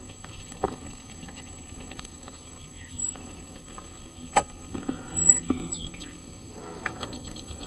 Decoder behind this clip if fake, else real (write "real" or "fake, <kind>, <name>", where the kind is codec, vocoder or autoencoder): fake, codec, SNAC